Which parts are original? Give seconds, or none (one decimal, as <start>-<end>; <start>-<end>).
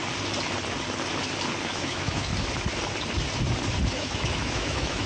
0.0-1.7; 2.3-3.9